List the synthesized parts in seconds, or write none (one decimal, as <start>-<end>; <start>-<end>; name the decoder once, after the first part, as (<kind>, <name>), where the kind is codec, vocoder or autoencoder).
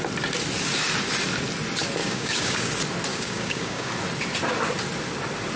2.0-2.7 (codec, DAC); 3.1-3.9